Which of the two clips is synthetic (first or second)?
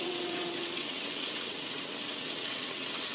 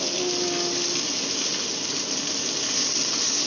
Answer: first